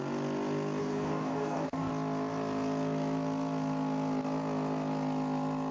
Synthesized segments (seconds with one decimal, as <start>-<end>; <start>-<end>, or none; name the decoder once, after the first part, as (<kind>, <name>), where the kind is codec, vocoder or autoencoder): 0.8-1.9 (codec, DAC)